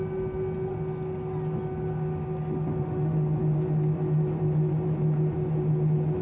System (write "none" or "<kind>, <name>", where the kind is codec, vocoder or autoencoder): none